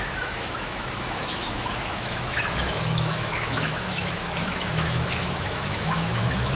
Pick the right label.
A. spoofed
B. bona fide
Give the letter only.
A